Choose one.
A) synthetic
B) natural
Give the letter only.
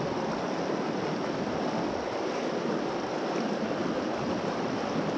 B